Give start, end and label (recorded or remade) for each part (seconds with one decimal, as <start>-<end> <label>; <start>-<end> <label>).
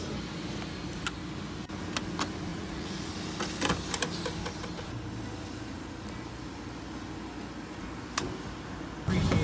0.0-2.5 recorded; 2.5-3.1 remade; 3.1-9.4 recorded